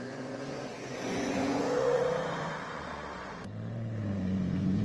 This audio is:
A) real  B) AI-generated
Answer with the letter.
B